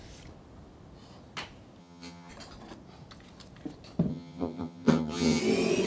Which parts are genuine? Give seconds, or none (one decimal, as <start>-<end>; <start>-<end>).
0.0-1.8; 2.3-4.1; 5.4-5.9